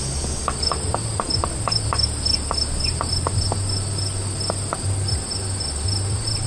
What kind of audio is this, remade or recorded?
recorded